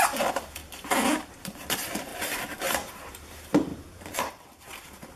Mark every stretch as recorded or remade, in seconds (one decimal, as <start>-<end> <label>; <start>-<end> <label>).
0.0-0.6 remade; 0.6-1.2 recorded; 1.2-5.2 remade